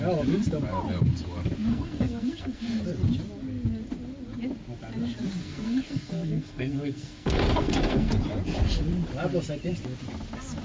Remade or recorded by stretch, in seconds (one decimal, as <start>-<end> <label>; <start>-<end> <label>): 0.0-1.7 recorded; 1.7-2.8 remade; 2.8-5.4 recorded; 5.4-8.1 remade; 8.1-10.6 recorded